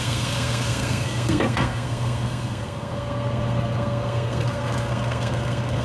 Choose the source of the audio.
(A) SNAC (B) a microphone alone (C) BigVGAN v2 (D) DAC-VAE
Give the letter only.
A